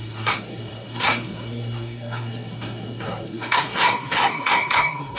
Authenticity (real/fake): fake